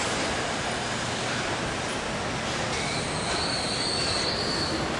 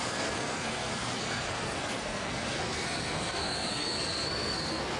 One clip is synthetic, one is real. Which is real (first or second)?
first